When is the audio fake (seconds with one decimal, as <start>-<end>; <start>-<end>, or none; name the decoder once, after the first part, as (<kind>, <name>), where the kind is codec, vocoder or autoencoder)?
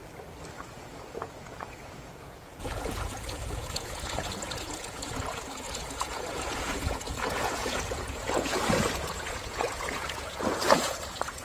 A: 0.6-11.4 (vocoder, Vocos)